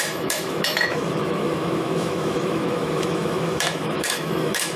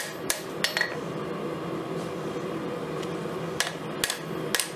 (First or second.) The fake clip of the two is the first